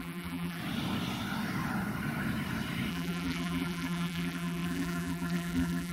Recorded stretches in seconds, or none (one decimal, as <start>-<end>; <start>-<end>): 0.6-2.9